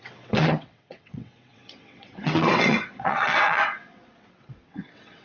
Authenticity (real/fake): fake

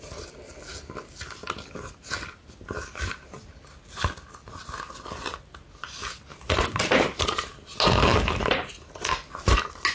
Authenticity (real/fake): real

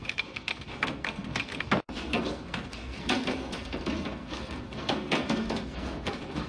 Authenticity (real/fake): fake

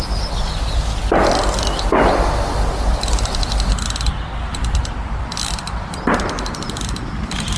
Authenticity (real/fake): real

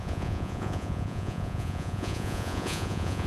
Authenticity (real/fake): fake